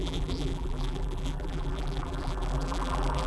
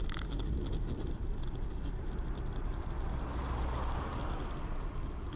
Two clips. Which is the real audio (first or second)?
second